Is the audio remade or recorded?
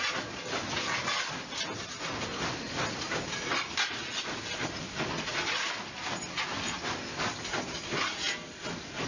recorded